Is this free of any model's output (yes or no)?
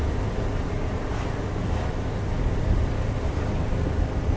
yes